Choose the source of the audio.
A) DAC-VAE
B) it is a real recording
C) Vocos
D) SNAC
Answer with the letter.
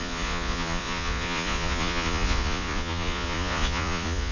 C